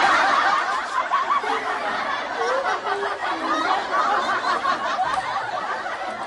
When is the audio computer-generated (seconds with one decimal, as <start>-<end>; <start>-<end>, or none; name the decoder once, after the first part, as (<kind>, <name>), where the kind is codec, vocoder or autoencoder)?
none